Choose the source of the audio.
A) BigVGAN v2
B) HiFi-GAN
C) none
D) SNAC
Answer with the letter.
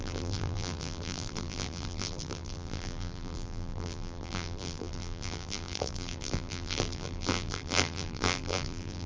A